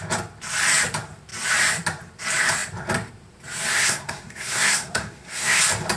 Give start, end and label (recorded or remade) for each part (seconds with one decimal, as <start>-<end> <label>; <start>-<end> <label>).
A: 0.0-3.7 recorded; 3.7-5.6 remade; 5.6-6.0 recorded